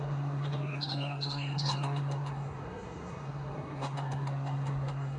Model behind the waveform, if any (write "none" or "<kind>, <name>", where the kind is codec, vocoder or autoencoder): codec, SNAC